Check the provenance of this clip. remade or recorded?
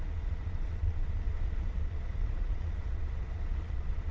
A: remade